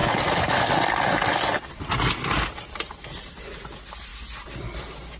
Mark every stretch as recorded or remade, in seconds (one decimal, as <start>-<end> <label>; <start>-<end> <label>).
0.0-0.5 remade; 0.5-5.2 recorded